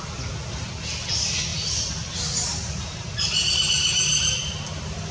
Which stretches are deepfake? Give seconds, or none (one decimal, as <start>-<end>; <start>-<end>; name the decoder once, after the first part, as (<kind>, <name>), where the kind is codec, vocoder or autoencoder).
none

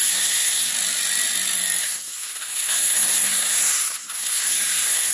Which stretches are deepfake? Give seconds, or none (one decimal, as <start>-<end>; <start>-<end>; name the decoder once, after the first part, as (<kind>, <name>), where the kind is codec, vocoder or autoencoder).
0.0-0.7 (codec, SNAC); 1.8-5.1

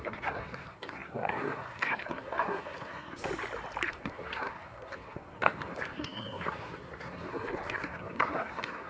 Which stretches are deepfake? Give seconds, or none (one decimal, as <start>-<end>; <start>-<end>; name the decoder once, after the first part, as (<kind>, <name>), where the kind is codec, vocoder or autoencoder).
0.0-3.3 (codec, SNAC); 3.9-8.9

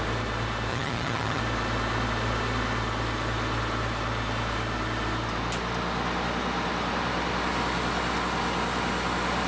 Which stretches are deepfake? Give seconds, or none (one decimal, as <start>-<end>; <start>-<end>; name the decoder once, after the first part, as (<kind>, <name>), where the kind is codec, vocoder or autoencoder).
0.7-1.4 (vocoder, HiFi-GAN)

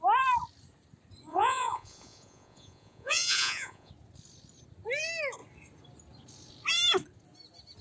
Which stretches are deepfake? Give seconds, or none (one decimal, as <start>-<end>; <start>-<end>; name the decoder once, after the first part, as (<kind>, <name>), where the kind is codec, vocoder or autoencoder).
1.3-3.9 (vocoder, Vocos)

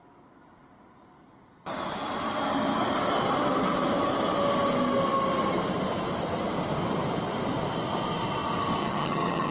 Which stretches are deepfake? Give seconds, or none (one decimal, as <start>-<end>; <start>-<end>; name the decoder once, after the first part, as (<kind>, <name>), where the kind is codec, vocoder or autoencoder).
8.8-9.5 (vocoder, HiFi-GAN)